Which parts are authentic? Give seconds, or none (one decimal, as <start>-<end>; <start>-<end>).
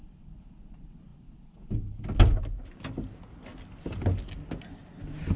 0.0-5.4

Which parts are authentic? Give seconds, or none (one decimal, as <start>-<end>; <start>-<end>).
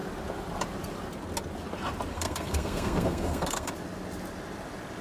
0.0-2.1; 3.7-5.0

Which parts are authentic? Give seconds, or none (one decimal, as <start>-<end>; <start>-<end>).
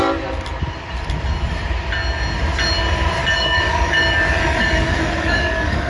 0.0-3.2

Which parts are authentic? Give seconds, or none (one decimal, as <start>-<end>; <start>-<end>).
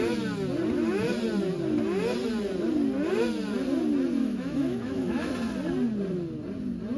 0.0-4.2; 5.3-7.0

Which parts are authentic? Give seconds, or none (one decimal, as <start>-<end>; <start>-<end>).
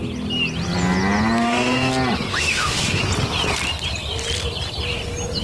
0.0-1.4; 1.9-2.3; 3.0-5.4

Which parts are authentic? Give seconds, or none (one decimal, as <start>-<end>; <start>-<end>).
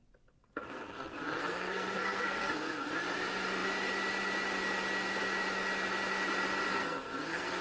0.0-0.4; 2.9-6.7